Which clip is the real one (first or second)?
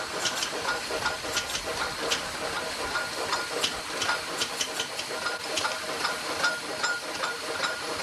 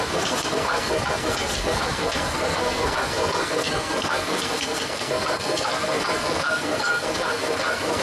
first